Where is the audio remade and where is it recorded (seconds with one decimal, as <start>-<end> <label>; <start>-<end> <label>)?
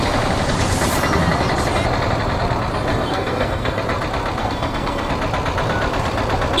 0.0-2.9 recorded; 2.9-3.8 remade; 3.8-4.4 recorded; 4.4-5.1 remade; 5.1-6.6 recorded